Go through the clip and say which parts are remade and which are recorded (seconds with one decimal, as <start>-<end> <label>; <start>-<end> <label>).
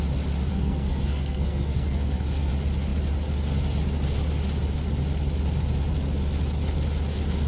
0.0-0.5 recorded; 0.5-2.5 remade; 2.5-7.5 recorded